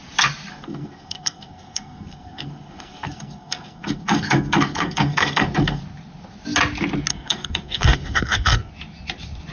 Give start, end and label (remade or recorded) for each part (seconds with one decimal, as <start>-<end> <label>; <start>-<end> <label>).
0.0-0.5 recorded; 0.5-5.8 remade; 5.8-7.1 recorded; 7.1-8.7 remade; 8.7-9.5 recorded